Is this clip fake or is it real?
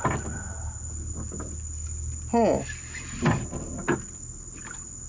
real